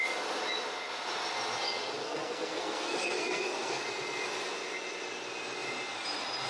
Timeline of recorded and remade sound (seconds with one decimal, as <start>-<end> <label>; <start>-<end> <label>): 0.0-2.0 recorded; 2.0-3.8 remade; 3.8-6.5 recorded